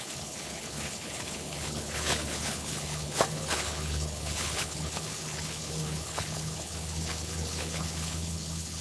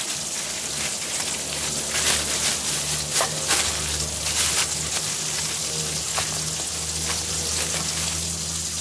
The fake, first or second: first